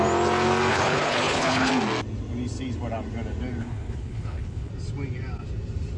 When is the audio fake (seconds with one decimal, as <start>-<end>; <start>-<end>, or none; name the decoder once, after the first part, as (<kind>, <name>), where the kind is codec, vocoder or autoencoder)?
0.7-1.7 (codec, HILCodec); 3.6-4.7

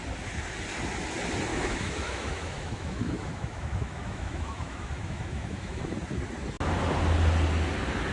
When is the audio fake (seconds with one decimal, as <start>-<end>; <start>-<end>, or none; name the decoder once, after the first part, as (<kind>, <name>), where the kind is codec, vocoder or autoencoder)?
1.5-5.9 (autoencoder, DAC-VAE)

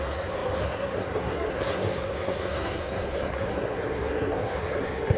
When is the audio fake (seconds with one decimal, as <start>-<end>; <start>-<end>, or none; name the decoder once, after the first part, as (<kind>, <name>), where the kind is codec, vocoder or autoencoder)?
0.0-5.2 (codec, SNAC)